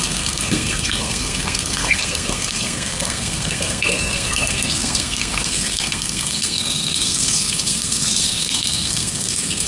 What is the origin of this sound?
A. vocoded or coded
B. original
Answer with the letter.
A